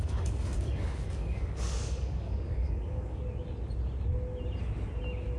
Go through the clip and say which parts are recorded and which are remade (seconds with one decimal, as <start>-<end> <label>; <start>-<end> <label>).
0.0-3.2 remade; 3.2-5.4 recorded